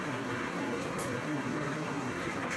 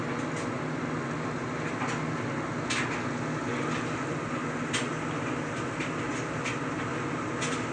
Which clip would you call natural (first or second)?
second